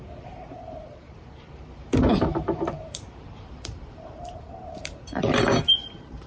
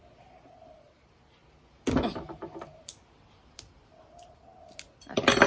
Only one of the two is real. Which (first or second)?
second